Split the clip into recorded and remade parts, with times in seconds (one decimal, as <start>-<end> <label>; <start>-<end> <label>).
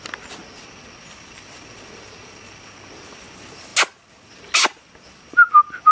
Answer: 0.0-5.9 recorded